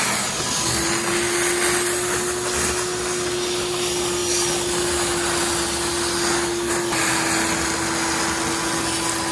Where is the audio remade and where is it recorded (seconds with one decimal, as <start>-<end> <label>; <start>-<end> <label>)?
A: 0.0-9.3 recorded